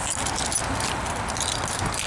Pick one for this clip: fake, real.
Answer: real